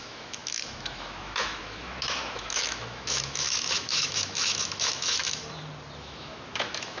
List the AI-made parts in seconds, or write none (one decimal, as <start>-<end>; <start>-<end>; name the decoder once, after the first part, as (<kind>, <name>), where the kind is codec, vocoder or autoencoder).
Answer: 0.0-5.4 (autoencoder, DAC-VAE); 6.0-7.0